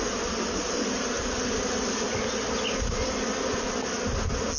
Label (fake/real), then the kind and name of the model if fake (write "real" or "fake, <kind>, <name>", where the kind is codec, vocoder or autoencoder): real